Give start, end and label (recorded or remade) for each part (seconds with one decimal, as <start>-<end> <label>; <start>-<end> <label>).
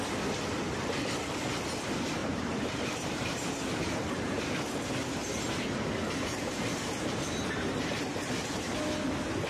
0.0-2.2 recorded; 2.2-4.4 remade; 4.4-5.2 recorded; 5.2-8.3 remade; 8.3-9.5 recorded